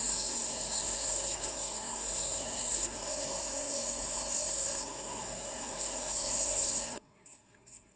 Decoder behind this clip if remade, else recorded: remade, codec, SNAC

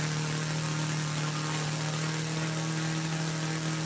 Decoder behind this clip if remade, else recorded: recorded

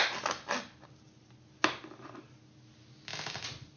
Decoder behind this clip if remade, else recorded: recorded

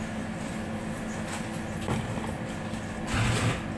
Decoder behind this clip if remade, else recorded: recorded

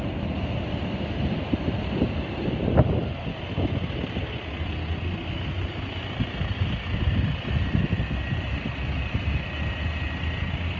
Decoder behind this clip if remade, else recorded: recorded